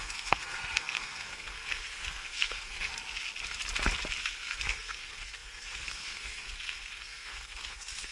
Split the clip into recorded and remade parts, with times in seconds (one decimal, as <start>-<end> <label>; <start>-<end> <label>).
0.0-2.9 remade; 2.9-4.2 recorded; 4.2-8.1 remade